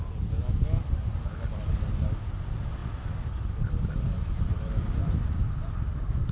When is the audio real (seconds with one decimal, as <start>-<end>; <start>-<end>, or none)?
0.0-6.3